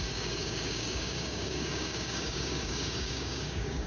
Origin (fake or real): fake